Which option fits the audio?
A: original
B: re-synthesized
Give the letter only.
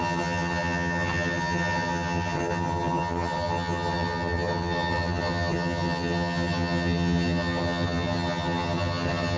B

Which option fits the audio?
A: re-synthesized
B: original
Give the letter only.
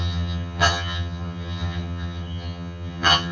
A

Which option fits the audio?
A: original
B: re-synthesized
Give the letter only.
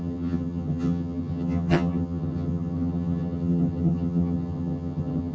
B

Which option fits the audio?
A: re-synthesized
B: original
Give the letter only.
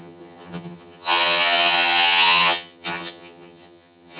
A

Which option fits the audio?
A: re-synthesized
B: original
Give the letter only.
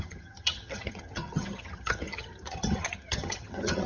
A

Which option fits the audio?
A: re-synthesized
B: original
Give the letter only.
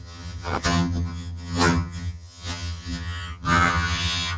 A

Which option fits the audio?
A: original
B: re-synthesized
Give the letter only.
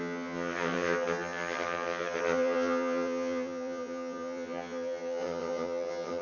B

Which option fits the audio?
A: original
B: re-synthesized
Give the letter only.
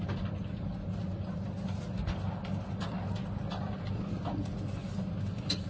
A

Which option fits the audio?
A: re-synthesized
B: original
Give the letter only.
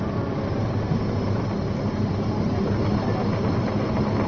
B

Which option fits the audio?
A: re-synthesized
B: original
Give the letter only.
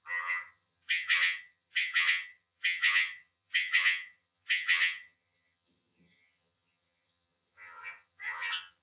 A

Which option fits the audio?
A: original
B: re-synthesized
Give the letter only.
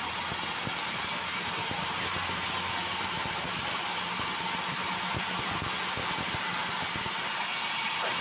A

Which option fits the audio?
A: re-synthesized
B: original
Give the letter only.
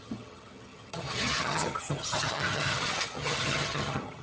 A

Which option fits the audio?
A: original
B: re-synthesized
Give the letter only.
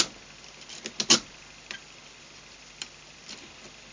A